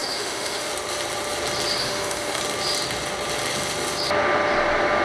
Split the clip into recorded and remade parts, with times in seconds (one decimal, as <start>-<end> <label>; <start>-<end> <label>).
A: 0.0-0.7 remade; 0.7-1.8 recorded; 1.8-2.4 remade; 2.4-5.0 recorded